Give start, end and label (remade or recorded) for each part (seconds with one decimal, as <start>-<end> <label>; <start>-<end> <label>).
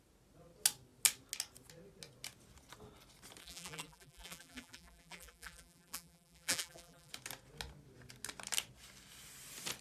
0.0-3.4 recorded; 3.4-7.1 remade; 7.1-9.8 recorded